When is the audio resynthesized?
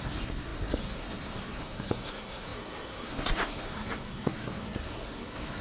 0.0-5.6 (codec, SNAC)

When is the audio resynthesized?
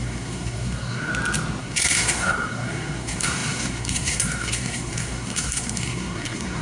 0.0-1.1 (codec, SNAC); 1.6-6.6